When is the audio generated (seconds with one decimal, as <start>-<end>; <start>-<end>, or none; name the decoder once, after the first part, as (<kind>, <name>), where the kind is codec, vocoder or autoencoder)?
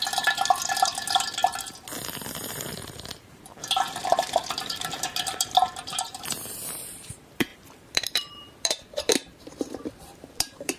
0.0-1.4 (vocoder, BigVGAN v2); 2.7-10.8